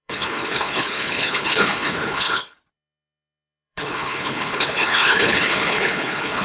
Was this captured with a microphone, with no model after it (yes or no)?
no